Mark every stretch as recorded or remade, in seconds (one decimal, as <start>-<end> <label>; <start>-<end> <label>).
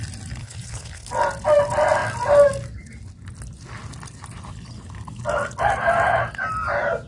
0.0-0.4 recorded; 0.4-1.1 remade; 1.1-7.1 recorded